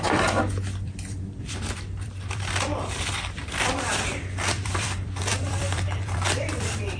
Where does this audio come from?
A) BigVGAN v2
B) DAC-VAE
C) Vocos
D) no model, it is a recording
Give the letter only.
A